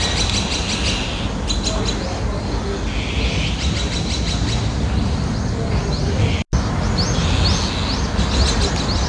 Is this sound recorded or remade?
recorded